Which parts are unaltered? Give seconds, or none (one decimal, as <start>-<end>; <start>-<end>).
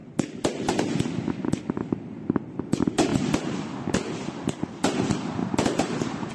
0.0-3.1; 3.6-5.4